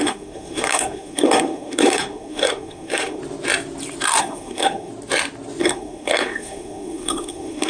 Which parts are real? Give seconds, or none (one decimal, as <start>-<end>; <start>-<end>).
3.2-4.2; 4.9-5.6